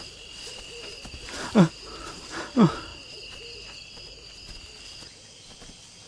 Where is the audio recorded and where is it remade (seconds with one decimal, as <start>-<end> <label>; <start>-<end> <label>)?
0.0-6.1 recorded